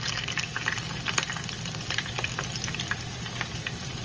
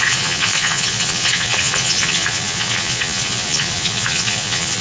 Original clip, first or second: first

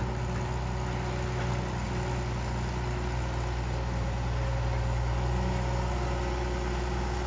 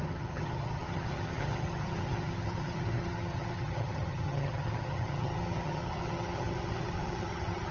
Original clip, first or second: first